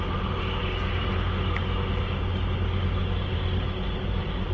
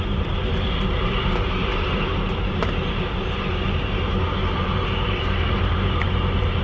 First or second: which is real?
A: first